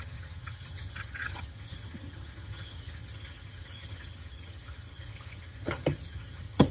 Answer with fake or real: fake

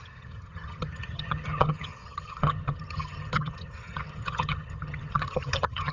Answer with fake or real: fake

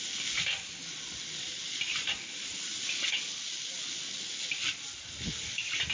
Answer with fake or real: real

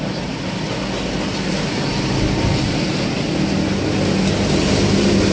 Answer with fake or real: real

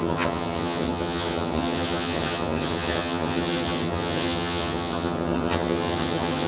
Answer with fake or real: fake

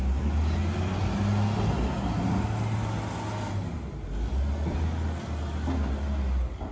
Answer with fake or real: real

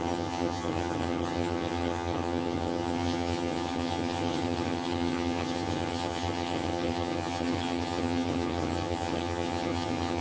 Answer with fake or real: fake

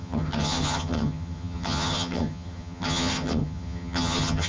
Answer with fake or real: fake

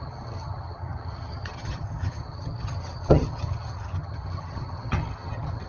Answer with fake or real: fake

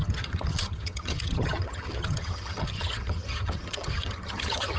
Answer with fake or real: fake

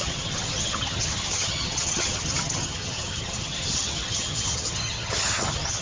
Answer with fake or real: fake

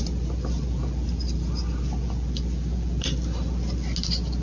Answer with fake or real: real